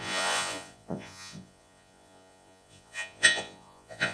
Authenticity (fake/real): fake